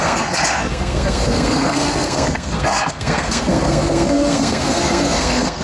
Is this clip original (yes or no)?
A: no